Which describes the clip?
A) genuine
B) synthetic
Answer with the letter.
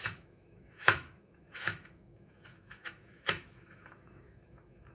B